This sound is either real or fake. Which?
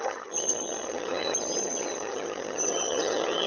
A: fake